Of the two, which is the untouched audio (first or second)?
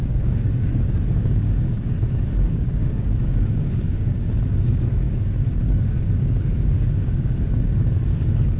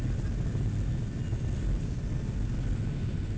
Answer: second